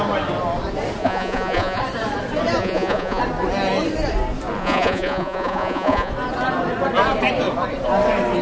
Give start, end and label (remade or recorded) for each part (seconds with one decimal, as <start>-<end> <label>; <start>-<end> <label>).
0.0-1.0 recorded; 1.0-1.8 remade; 1.8-2.6 recorded; 2.6-3.2 remade; 3.2-4.6 recorded; 4.6-6.1 remade; 6.1-8.4 recorded